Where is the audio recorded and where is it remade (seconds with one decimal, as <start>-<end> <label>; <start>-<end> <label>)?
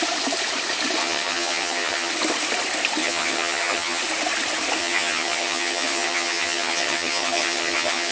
0.0-1.0 recorded; 1.0-2.1 remade; 2.1-3.0 recorded; 3.0-4.0 remade; 4.0-4.8 recorded; 4.8-8.1 remade